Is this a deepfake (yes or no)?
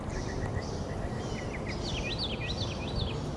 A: no